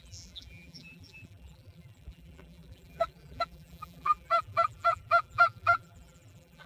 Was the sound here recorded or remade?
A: remade